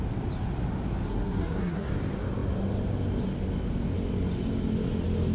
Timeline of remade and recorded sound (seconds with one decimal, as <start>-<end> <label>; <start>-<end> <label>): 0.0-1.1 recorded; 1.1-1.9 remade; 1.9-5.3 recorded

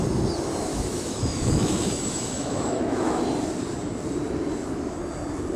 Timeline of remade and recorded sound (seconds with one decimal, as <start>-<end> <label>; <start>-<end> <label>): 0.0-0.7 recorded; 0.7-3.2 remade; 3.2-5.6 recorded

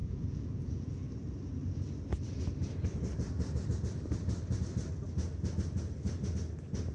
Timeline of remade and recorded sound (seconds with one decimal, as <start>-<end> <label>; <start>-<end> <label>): 0.0-1.1 remade; 1.1-6.9 recorded